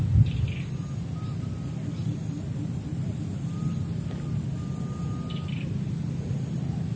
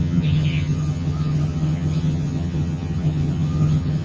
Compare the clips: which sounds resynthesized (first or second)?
second